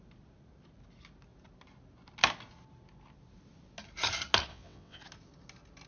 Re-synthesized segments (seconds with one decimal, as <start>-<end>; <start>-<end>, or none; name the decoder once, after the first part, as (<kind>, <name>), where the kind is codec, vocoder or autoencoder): 4.5-5.0 (vocoder, WaveNeXt)